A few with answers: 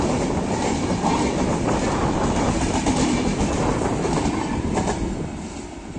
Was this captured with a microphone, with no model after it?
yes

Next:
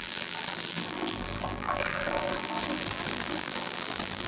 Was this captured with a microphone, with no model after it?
no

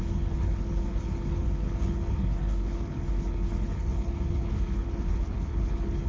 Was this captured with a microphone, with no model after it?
no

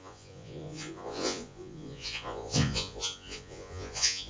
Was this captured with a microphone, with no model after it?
no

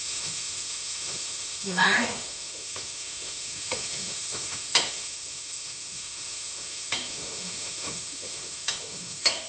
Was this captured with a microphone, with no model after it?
no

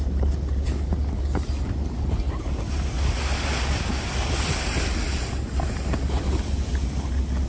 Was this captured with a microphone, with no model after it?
yes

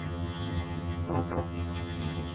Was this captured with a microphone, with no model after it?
no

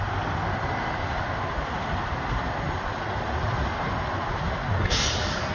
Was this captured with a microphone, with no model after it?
yes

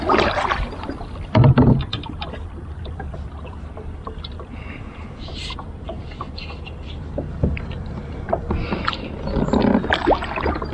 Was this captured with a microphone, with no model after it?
yes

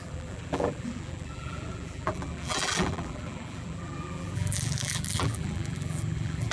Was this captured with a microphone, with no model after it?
no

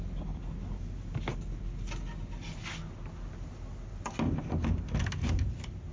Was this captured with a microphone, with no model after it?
yes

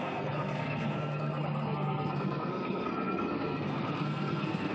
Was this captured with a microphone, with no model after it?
no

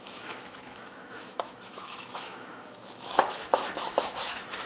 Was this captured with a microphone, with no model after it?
no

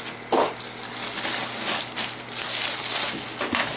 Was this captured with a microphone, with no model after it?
yes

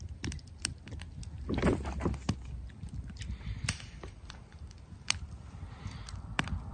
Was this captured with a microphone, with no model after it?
yes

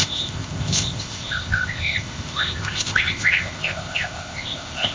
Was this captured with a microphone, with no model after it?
no